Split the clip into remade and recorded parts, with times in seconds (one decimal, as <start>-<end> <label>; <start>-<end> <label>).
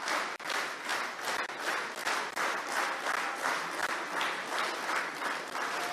0.0-5.9 recorded